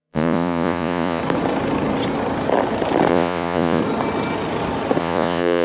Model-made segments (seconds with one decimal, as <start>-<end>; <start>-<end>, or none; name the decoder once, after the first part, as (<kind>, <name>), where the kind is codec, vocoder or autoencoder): 0.0-1.2 (vocoder, Vocos); 3.1-3.8; 5.0-5.6